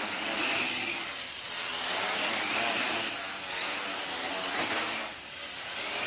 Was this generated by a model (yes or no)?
no